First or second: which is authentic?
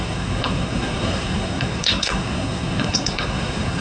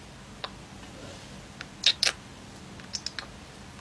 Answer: second